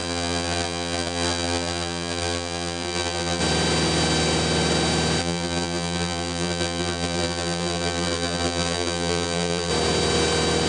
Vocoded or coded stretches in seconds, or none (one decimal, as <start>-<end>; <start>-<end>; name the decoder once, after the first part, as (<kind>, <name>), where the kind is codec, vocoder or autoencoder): 0.0-3.4 (vocoder, BigVGAN v2); 5.2-9.7